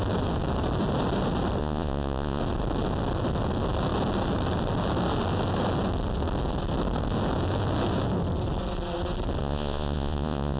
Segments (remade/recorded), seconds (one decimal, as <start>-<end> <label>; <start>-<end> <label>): 0.0-1.6 recorded; 1.6-2.4 remade; 2.4-9.4 recorded; 9.4-10.6 remade

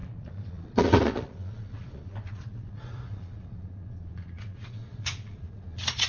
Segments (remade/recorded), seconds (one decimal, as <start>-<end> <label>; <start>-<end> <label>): 0.0-6.1 remade